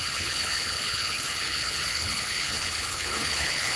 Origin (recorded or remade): remade